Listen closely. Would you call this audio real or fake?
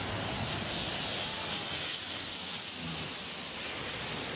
real